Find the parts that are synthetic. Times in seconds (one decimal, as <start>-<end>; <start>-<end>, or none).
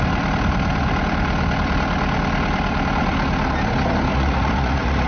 4.1-5.1